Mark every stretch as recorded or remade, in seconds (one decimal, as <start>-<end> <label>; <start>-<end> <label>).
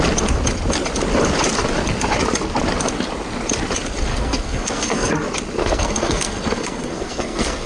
0.0-4.1 recorded; 4.1-5.1 remade; 5.1-5.6 recorded; 5.6-7.7 remade